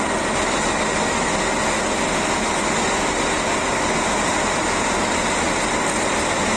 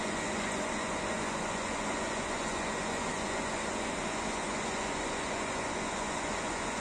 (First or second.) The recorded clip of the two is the first